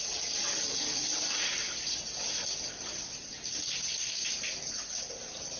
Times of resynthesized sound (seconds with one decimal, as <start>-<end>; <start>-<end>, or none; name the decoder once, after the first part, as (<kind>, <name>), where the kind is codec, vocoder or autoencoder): none